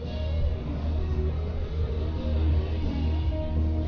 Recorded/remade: recorded